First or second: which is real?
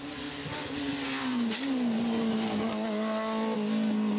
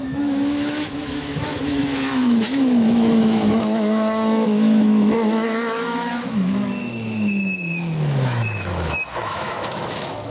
first